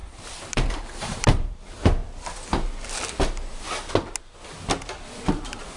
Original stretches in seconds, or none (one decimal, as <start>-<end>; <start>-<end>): 2.0-5.8